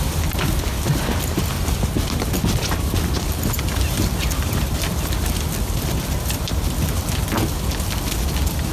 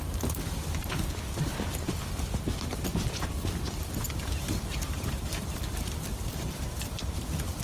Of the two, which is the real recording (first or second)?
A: first